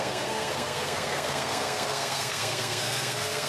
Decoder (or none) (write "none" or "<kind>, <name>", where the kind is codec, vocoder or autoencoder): codec, SNAC